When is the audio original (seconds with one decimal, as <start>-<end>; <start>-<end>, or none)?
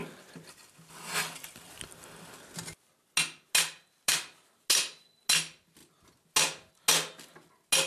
0.0-7.9